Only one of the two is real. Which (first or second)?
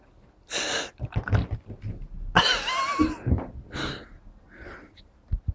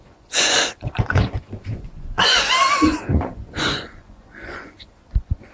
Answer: first